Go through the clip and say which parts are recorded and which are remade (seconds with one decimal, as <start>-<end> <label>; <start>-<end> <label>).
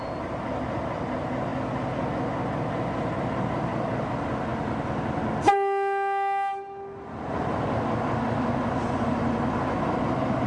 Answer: 0.0-4.5 remade; 4.5-9.8 recorded; 9.8-10.5 remade